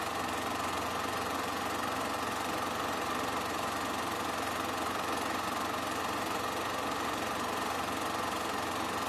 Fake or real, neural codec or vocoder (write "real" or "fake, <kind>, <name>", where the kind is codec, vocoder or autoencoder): real